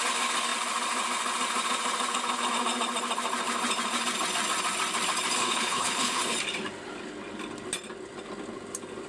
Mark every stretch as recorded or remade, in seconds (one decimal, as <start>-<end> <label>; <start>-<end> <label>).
0.0-5.4 recorded; 5.4-6.2 remade; 6.2-9.1 recorded